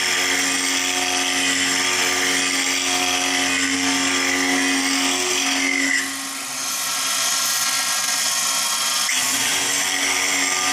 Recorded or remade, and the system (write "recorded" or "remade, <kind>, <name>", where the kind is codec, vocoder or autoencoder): recorded